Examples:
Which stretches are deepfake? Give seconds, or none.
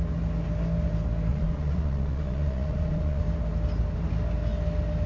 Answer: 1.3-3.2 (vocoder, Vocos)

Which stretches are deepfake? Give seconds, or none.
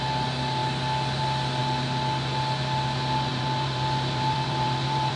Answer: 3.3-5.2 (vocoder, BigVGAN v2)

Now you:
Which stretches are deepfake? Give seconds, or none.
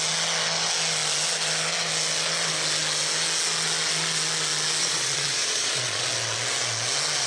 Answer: 4.8-6.1 (vocoder, Vocos)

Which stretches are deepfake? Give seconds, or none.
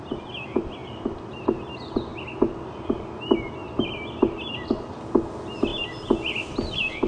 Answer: none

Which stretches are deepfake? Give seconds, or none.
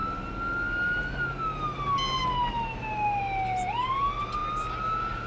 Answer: none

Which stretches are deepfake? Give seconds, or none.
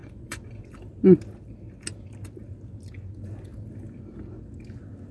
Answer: 0.0-0.7 (vocoder, Vocos)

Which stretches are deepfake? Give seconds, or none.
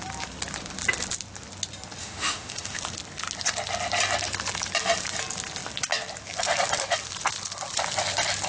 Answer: 2.0-2.8 (autoencoder, DAC-VAE)